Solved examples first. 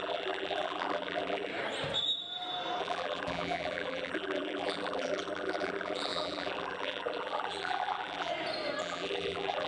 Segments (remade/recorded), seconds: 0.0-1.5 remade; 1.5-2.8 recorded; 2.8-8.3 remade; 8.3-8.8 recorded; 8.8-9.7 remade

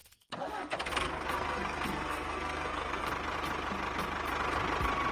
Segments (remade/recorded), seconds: 0.0-3.1 remade; 3.1-5.1 recorded

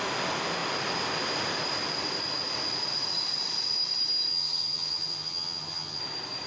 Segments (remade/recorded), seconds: 0.0-4.3 recorded; 4.3-6.0 remade; 6.0-6.5 recorded

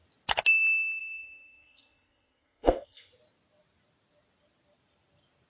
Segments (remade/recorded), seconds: 0.0-1.0 recorded; 1.0-3.1 remade; 3.1-5.5 recorded

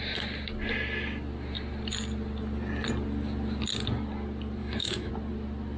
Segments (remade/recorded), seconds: 0.0-4.6 recorded; 4.6-5.1 remade; 5.1-5.8 recorded

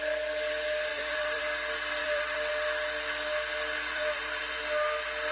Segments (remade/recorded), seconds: 0.0-0.9 recorded; 0.9-1.4 remade; 1.4-2.0 recorded; 2.0-2.5 remade; 2.5-3.5 recorded; 3.5-4.2 remade; 4.2-5.3 recorded